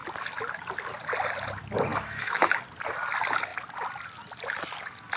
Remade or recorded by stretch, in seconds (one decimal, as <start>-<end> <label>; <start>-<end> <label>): 0.0-1.9 recorded; 1.9-2.6 remade; 2.6-5.2 recorded